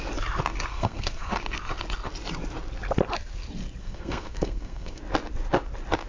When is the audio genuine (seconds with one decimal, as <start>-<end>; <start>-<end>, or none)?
0.0-0.7; 1.3-3.8; 5.0-6.1